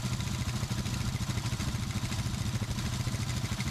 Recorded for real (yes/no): yes